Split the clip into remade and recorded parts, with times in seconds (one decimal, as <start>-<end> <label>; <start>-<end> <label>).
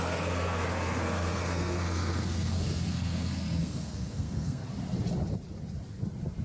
0.0-4.6 remade; 4.6-6.4 recorded